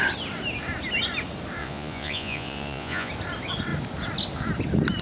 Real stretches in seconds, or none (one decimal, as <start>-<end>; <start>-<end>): 0.0-1.6; 3.1-5.0